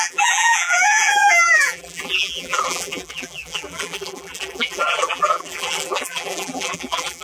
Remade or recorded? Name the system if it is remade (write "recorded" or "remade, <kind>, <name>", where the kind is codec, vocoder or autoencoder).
remade, vocoder, BigVGAN v2